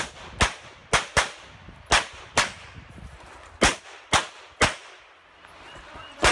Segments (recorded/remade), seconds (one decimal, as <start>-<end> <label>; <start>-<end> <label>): 0.0-6.3 recorded